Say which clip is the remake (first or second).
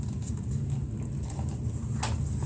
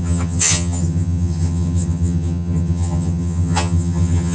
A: second